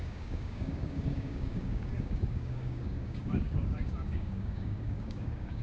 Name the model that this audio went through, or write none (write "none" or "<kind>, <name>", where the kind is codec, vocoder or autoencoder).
codec, DAC